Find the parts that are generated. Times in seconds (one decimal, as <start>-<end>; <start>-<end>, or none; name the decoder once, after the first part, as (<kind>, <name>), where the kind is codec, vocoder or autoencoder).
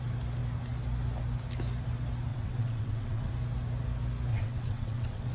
2.3-3.3 (vocoder, WaveNeXt); 4.3-5.3